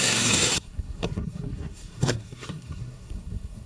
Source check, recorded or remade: remade